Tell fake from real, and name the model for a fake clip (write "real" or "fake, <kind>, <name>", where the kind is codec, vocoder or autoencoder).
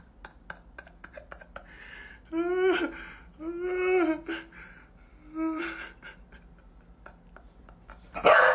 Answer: real